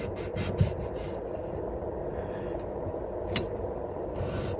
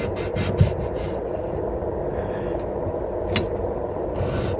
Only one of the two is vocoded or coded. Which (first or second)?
first